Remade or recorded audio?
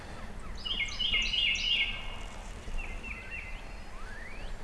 recorded